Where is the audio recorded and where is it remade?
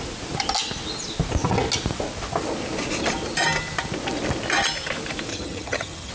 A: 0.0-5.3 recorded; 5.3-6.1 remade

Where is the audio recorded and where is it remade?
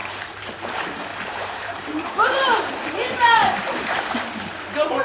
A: 0.0-0.5 remade; 0.5-1.1 recorded; 1.1-4.1 remade; 4.1-5.0 recorded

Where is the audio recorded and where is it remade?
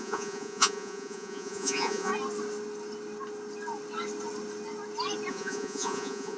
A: 0.0-2.1 remade; 2.1-5.3 recorded; 5.3-6.4 remade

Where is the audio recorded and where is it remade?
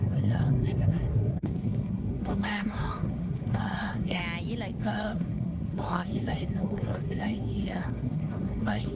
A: 0.0-4.2 remade; 4.2-4.8 recorded; 4.8-9.0 remade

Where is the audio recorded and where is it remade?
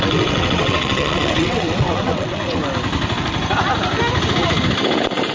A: 0.0-2.6 remade; 2.6-5.3 recorded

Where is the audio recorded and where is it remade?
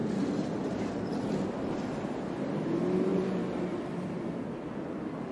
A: 0.0-1.0 remade; 1.0-3.1 recorded; 3.1-4.2 remade; 4.2-5.3 recorded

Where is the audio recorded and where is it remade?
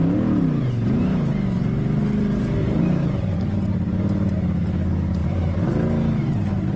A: 0.0-2.6 recorded; 2.6-3.4 remade; 3.4-5.2 recorded; 5.2-5.7 remade; 5.7-6.8 recorded